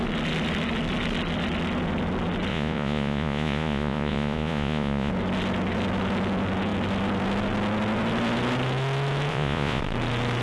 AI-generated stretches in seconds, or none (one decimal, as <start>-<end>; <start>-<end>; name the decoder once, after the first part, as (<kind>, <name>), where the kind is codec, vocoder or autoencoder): 2.5-5.1 (vocoder, Vocos); 9.3-9.8